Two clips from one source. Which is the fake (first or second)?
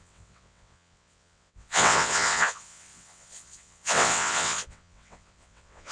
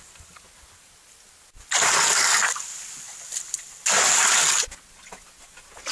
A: first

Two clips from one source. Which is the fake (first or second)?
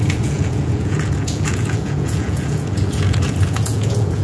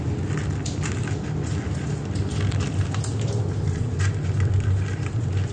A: first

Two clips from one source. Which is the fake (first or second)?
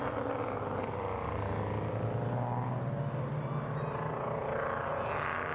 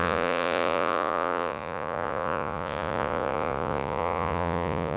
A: second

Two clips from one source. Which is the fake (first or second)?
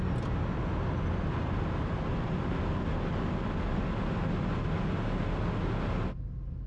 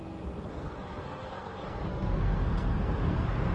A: second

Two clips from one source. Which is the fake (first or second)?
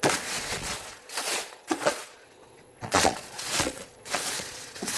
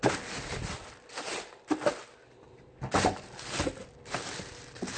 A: first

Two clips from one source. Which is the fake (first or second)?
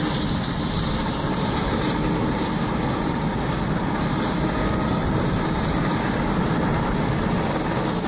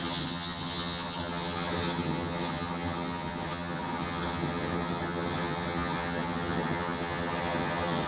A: second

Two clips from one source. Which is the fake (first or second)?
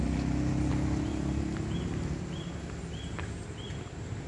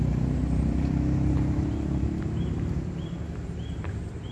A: second